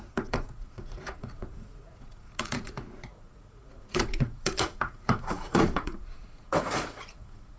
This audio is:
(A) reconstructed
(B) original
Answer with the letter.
A